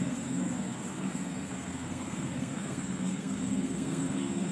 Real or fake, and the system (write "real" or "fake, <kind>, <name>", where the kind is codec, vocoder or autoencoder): fake, codec, SNAC